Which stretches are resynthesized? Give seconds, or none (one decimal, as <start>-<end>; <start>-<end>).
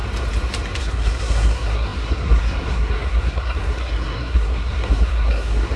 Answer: 0.8-5.8